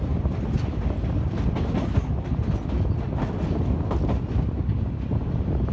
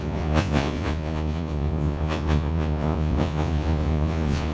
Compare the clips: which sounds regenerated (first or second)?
second